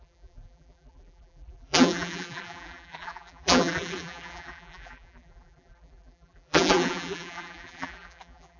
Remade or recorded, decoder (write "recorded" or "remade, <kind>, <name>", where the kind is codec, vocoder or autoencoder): remade, vocoder, BigVGAN v2